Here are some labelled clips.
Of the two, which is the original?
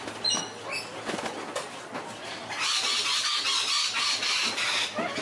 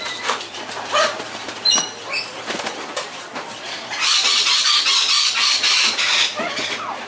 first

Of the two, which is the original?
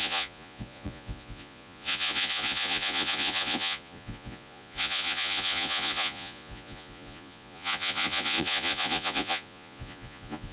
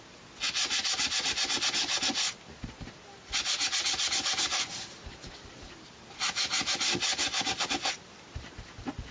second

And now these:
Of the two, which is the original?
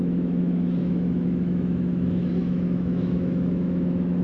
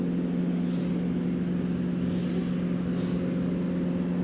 second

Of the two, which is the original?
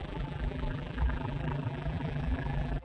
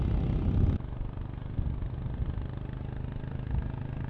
second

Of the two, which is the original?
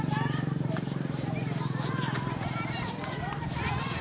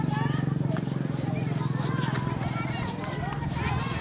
second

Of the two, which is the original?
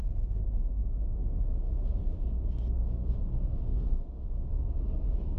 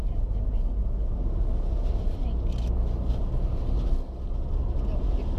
second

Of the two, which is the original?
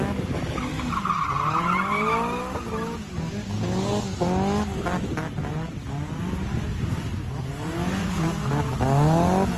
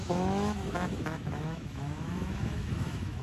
first